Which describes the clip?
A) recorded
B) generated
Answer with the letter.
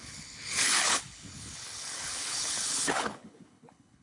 B